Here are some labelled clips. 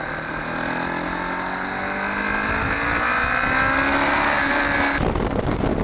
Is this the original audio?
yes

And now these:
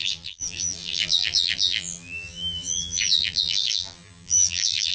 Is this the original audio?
no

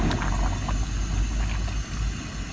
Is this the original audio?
yes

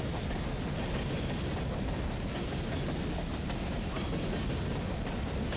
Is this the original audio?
yes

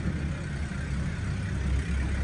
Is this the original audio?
yes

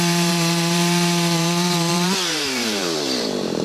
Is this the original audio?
no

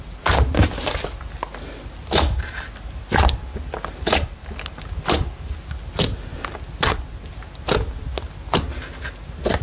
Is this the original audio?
yes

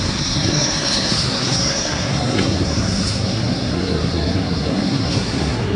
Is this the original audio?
no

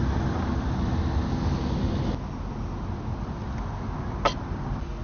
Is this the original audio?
yes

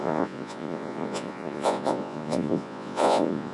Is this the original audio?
no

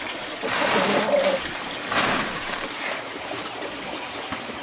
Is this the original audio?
yes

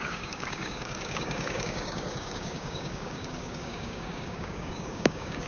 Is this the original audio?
no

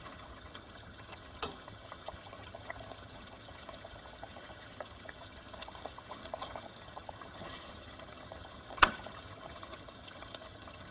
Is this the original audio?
no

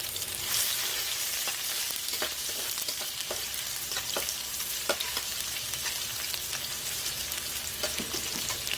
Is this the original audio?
no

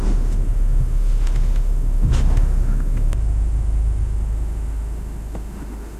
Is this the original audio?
no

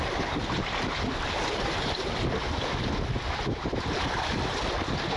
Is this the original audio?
yes